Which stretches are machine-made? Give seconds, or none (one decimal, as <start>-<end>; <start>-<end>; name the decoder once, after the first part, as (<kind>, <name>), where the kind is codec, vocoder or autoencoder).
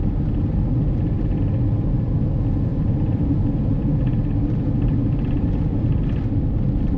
0.0-1.4 (vocoder, BigVGAN v2); 2.7-7.0